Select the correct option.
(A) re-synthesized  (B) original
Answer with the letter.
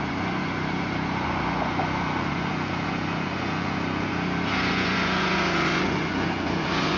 A